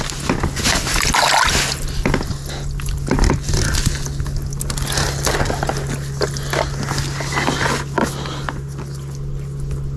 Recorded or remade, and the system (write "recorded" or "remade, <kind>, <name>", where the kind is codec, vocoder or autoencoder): recorded